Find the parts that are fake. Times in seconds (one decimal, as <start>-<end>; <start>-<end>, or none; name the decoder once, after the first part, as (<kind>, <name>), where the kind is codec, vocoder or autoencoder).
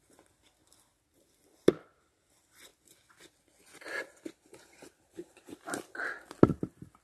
none